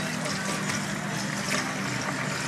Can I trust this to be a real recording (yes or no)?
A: yes